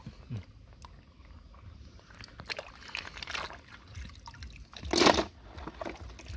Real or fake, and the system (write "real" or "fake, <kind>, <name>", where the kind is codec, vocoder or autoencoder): real